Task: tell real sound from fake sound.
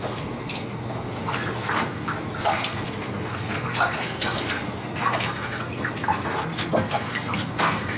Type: fake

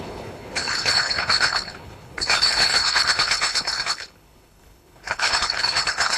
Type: fake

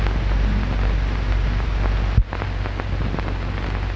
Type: real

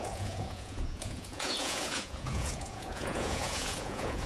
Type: fake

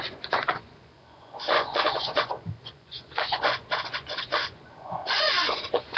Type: fake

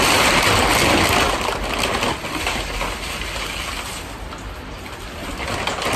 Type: real